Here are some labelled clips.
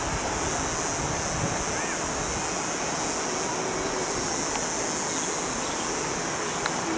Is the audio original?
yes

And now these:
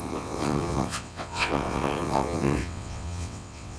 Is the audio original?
no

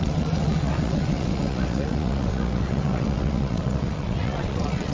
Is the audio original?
no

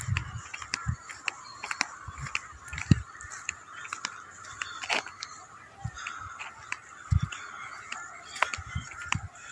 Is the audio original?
yes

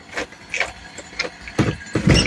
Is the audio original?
yes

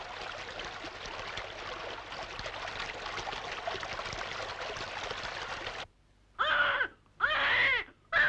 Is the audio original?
yes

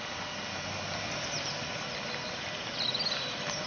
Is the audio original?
yes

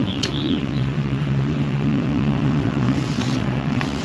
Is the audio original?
no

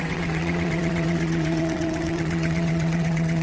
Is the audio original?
no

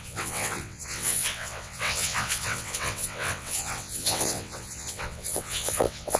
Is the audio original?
no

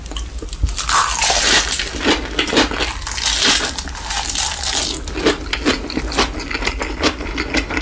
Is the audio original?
yes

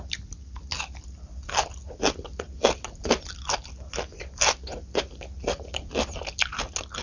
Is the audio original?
yes